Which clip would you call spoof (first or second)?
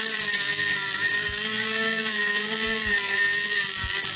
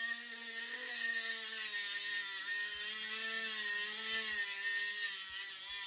first